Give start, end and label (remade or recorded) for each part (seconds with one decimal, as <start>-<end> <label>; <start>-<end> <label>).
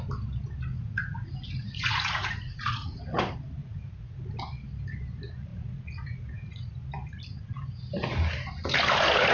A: 0.0-0.7 recorded; 0.7-3.2 remade; 3.2-3.6 recorded; 3.6-4.3 remade; 4.3-5.5 recorded; 5.5-6.7 remade; 6.7-9.3 recorded